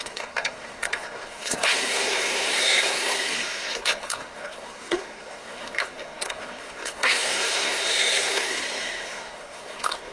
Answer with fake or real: fake